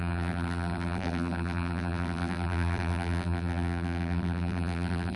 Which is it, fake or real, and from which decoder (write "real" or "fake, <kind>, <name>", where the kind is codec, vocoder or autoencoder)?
fake, vocoder, BigVGAN v2